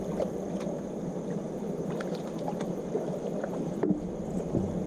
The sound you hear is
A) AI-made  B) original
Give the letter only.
B